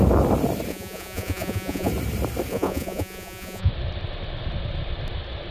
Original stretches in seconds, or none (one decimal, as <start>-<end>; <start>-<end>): 0.0-0.7; 1.9-2.5; 3.7-5.5